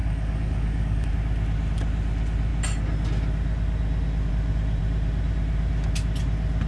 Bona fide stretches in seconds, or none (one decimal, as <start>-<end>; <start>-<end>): 1.1-6.7